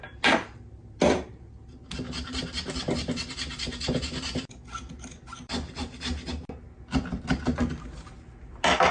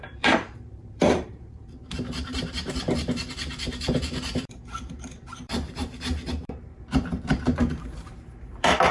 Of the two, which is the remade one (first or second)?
second